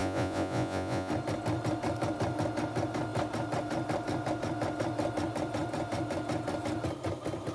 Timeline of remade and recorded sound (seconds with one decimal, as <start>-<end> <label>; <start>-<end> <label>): 0.0-1.1 remade; 1.1-7.5 recorded